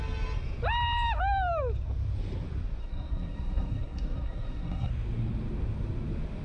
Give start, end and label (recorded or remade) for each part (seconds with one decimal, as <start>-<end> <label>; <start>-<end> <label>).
0.0-2.8 recorded; 2.8-4.9 remade; 4.9-6.4 recorded